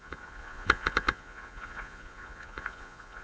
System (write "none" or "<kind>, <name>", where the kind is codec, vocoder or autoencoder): vocoder, Vocos